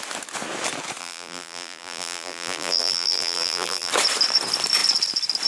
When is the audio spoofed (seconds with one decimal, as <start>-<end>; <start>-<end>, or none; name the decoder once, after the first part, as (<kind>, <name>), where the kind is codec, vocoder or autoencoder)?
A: 1.0-3.9 (vocoder, BigVGAN v2)

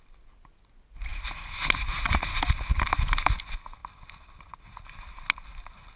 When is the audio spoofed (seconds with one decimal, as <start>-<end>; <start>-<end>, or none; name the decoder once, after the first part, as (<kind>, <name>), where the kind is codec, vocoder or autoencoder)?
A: 3.8-4.4 (vocoder, BigVGAN v2)